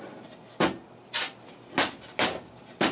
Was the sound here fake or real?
real